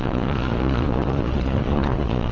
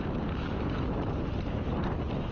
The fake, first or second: first